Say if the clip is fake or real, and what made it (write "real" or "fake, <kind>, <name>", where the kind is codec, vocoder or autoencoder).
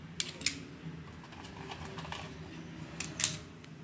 real